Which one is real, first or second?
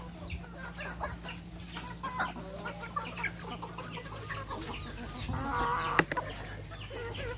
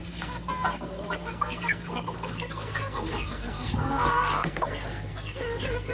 first